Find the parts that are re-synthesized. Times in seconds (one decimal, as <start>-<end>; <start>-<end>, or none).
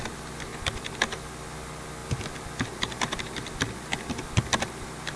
0.5-1.0; 2.0-5.2